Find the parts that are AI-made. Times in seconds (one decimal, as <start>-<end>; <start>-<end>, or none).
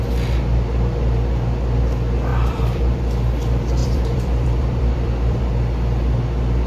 2.3-3.0; 3.8-5.4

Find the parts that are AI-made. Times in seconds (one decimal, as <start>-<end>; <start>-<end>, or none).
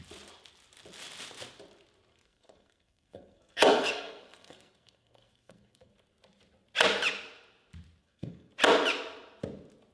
2.1-5.9; 8.0-8.5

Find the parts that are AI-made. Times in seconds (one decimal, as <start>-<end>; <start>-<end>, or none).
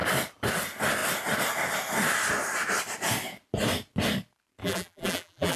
4.6-5.6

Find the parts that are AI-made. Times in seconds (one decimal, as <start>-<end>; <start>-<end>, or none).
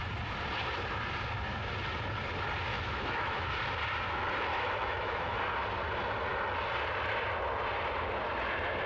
2.7-3.5; 4.5-5.4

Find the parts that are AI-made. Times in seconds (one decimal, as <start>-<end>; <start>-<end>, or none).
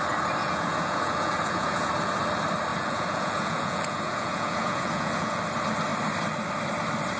0.4-1.9; 2.7-5.4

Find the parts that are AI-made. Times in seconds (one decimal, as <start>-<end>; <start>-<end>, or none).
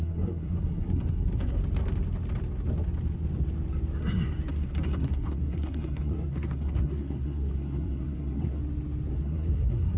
0.0-1.6; 4.5-8.6; 9.1-10.0